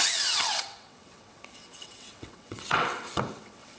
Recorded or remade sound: remade